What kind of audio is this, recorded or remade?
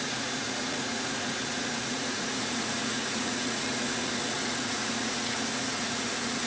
remade